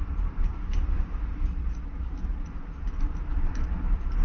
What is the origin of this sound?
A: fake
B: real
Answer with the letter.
A